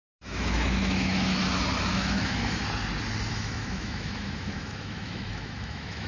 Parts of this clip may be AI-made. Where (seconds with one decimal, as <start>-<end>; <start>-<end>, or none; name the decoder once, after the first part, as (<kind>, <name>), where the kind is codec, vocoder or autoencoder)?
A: 0.0-1.4 (autoencoder, DAC-VAE); 1.9-2.6; 3.3-6.1